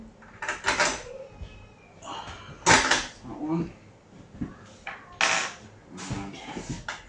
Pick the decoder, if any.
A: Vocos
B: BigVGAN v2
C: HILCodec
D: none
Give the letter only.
D